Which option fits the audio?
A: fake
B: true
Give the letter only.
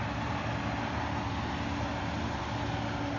B